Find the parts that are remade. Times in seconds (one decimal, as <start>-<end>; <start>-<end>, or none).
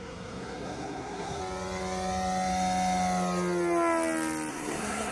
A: 0.0-1.4; 4.5-5.1